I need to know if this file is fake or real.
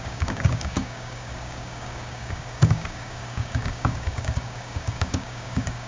fake